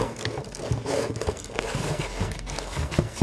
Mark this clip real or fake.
fake